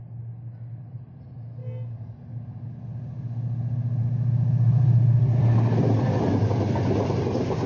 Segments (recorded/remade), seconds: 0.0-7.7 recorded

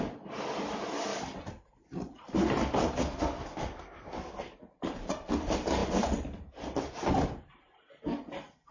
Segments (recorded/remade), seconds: 0.0-3.0 recorded; 3.0-4.5 remade; 4.5-8.7 recorded

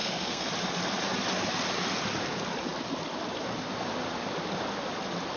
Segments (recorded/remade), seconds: 0.0-0.5 remade; 0.5-5.4 recorded

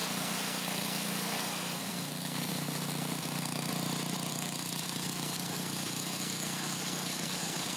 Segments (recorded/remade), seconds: 0.0-3.7 remade; 3.7-4.3 recorded; 4.3-7.8 remade

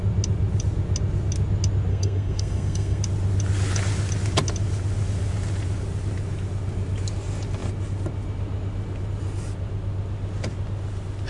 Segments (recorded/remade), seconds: 0.0-1.9 recorded; 1.9-3.0 remade; 3.0-11.3 recorded